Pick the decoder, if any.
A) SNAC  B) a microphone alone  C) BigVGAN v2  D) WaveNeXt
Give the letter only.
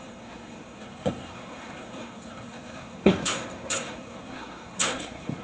A